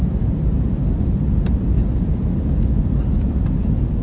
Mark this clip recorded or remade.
recorded